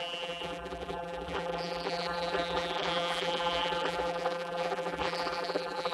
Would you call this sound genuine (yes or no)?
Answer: no